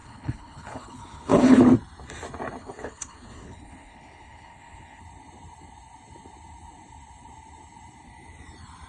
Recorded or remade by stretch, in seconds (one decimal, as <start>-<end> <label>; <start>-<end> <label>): 0.0-1.6 remade; 1.6-2.6 recorded; 2.6-5.0 remade; 5.0-8.9 recorded

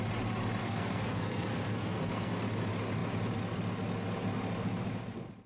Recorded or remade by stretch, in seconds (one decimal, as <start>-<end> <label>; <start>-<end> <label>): 0.0-0.6 recorded; 0.6-2.3 remade; 2.3-5.5 recorded

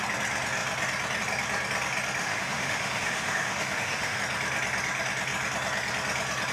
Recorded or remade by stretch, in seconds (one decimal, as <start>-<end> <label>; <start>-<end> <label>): 0.0-2.2 recorded; 2.2-4.2 remade; 4.2-6.5 recorded

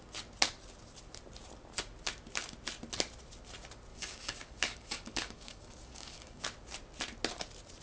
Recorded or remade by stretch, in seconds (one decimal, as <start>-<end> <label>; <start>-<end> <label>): 0.0-3.9 recorded; 3.9-6.4 remade; 6.4-7.8 recorded

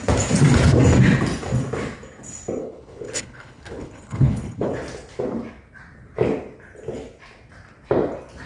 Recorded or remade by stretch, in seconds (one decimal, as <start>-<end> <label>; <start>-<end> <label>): 0.0-2.6 recorded; 2.6-4.7 remade; 4.7-8.5 recorded

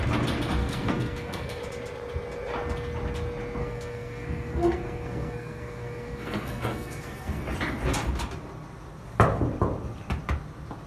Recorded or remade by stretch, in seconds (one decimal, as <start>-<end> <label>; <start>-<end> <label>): 0.0-0.6 recorded; 0.6-1.6 remade; 1.6-3.6 recorded; 3.6-7.4 remade; 7.4-10.9 recorded

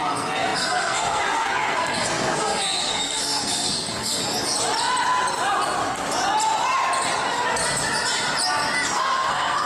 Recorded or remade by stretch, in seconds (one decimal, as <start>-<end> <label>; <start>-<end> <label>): 0.0-4.2 remade; 4.2-8.9 recorded; 8.9-9.7 remade